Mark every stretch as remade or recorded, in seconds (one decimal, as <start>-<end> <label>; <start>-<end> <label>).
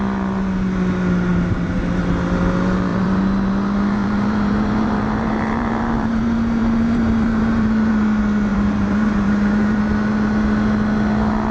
0.0-1.3 recorded; 1.3-1.8 remade; 1.8-2.9 recorded; 2.9-7.9 remade; 7.9-8.5 recorded; 8.5-9.8 remade; 9.8-11.5 recorded